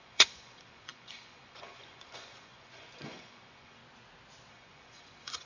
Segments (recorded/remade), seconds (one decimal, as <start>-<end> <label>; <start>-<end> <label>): 0.0-3.8 remade; 3.8-4.5 recorded; 4.5-5.5 remade